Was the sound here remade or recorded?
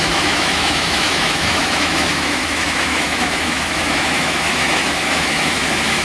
remade